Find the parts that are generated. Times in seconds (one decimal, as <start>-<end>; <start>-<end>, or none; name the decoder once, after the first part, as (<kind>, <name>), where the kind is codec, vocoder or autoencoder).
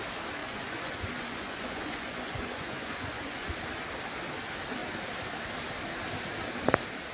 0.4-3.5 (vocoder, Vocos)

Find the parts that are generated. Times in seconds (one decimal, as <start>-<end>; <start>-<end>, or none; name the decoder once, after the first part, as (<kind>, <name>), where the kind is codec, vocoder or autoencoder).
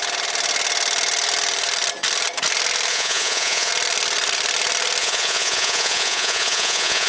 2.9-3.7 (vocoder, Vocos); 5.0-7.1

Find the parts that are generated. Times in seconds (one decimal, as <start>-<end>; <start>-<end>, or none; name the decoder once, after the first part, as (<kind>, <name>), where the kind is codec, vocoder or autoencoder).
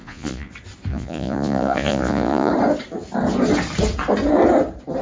0.0-0.5 (vocoder, Vocos); 0.9-2.5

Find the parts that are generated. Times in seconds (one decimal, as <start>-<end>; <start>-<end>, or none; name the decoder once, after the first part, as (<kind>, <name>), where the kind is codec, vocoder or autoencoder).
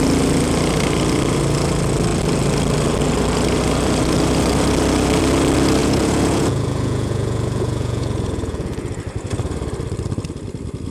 5.8-8.9 (vocoder, Vocos)